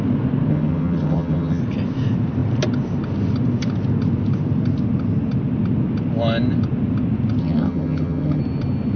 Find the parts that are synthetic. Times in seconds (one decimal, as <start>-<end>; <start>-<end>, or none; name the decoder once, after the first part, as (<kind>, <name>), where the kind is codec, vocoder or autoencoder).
0.5-1.6 (vocoder, HiFi-GAN); 7.4-8.4